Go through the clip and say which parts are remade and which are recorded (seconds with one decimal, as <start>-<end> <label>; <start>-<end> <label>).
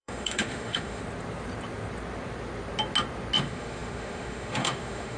0.0-1.0 remade; 1.0-3.4 recorded; 3.4-5.2 remade